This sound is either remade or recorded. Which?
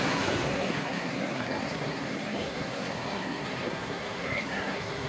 remade